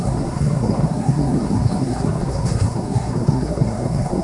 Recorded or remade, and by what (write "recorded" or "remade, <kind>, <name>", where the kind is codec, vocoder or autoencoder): remade, codec, SNAC